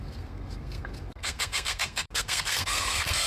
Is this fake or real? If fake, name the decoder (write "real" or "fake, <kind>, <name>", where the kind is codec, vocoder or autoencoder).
fake, codec, SNAC